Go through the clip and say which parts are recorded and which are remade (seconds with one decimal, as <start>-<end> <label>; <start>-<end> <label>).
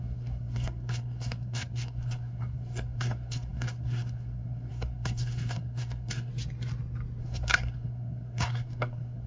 0.0-6.3 remade; 6.3-7.2 recorded; 7.2-9.3 remade